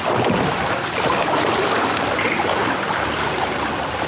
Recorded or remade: recorded